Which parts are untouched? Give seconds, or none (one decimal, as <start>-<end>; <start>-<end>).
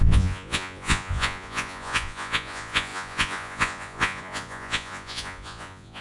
none